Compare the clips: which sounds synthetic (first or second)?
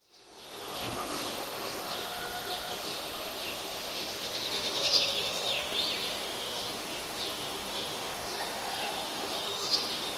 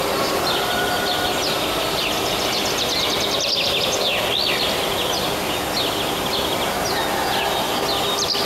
first